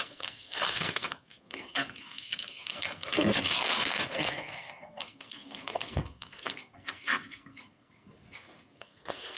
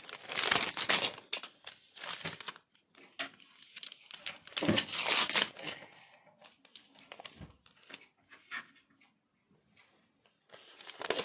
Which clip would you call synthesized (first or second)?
first